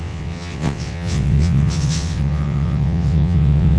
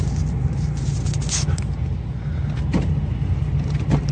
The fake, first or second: first